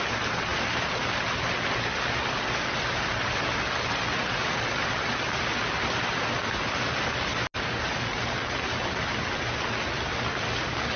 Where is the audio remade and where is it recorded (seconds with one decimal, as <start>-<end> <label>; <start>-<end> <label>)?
0.0-11.0 recorded